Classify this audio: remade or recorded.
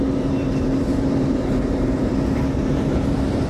remade